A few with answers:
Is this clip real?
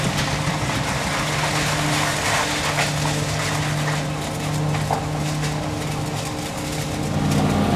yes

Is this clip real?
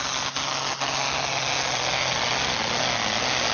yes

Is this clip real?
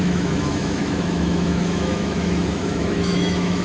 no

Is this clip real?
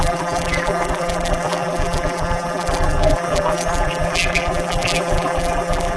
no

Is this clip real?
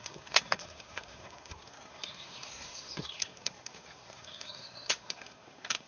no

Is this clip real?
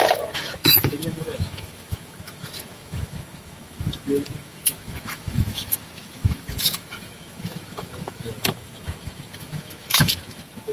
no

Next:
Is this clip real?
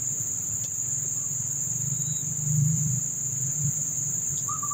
no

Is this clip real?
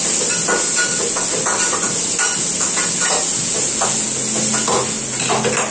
yes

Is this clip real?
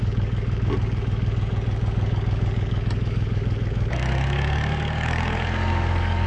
no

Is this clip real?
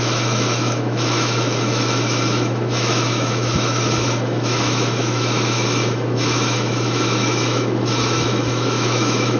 no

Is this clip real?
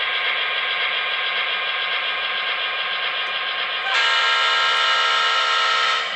yes